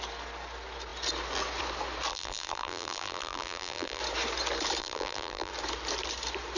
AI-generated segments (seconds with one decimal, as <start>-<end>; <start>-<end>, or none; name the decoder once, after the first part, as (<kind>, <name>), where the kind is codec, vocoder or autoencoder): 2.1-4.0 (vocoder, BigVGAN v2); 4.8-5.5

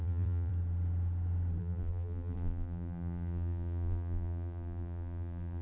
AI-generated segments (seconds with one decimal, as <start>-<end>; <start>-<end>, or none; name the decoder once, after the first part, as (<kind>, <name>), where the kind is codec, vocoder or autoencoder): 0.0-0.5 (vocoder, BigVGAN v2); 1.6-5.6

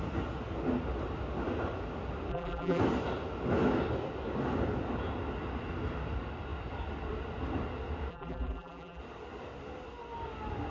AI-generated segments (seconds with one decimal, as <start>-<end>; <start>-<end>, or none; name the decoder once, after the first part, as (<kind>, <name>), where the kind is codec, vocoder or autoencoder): 2.3-2.8 (vocoder, BigVGAN v2); 8.1-9.0